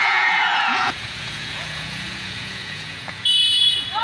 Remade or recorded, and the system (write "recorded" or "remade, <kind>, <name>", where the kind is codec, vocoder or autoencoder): remade, vocoder, Vocos